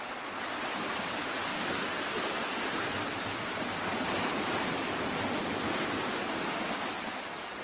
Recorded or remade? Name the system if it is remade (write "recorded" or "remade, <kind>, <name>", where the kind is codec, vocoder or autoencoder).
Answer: recorded